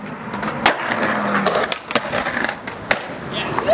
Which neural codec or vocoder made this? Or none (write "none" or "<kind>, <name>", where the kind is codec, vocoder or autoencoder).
none